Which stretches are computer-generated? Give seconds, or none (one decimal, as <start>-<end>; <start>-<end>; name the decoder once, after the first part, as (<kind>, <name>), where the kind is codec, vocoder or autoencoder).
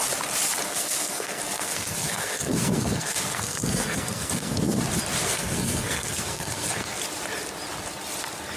0.7-4.8 (codec, SNAC); 5.2-7.0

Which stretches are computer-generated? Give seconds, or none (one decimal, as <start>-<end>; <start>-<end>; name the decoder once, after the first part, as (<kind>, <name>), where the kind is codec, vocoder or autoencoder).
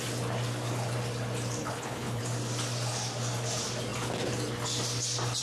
1.6-2.2 (codec, HILCodec)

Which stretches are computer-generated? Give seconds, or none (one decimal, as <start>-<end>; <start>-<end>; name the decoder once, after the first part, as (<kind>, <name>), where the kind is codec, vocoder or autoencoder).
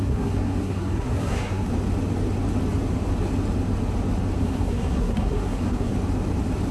0.0-1.7 (codec, SNAC); 4.4-5.9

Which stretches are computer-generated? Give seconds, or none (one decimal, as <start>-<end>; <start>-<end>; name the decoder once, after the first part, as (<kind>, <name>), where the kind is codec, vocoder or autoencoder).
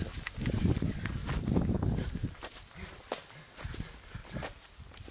none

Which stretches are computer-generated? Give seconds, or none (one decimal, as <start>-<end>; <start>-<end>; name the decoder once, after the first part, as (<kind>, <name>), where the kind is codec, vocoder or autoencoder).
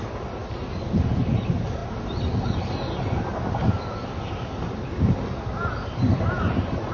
none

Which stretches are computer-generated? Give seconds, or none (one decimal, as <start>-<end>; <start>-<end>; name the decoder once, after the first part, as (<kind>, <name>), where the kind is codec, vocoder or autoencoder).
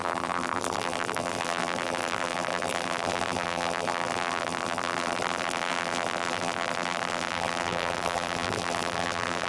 0.0-9.5 (vocoder, BigVGAN v2)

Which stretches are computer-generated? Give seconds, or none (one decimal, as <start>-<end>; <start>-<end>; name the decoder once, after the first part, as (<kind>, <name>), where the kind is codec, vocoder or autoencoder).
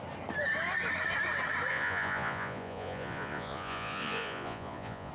1.7-5.1 (vocoder, Vocos)